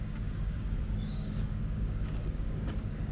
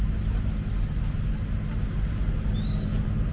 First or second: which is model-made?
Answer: first